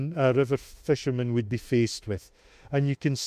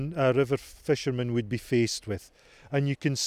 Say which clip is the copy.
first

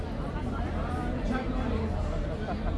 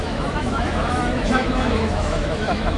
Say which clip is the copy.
second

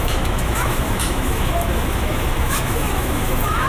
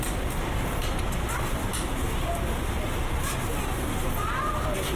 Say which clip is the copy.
first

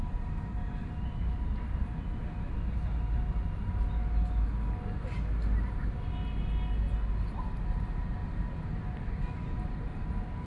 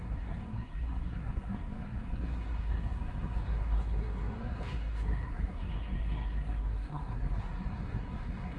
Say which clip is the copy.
second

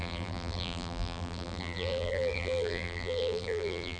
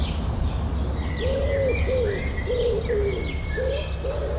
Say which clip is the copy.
first